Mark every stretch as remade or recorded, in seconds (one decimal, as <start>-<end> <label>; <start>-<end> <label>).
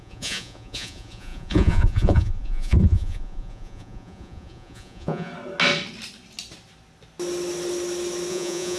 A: 0.0-5.3 remade; 5.3-8.3 recorded; 8.3-8.8 remade